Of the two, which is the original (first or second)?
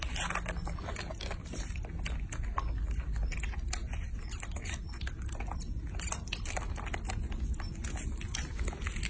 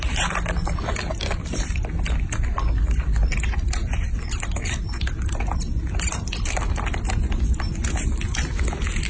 first